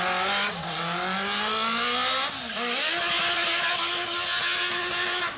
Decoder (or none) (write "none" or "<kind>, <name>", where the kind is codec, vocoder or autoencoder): none